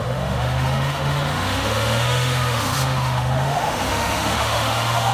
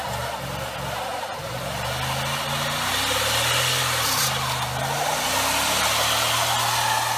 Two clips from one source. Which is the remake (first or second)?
first